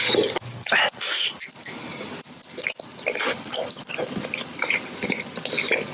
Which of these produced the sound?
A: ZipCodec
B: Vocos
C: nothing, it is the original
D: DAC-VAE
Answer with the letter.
C